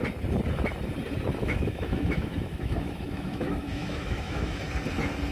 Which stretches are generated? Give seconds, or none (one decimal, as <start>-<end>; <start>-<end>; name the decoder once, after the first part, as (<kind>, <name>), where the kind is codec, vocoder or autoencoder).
1.4-4.6 (autoencoder, DAC-VAE)